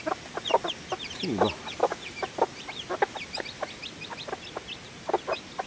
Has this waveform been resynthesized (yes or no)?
no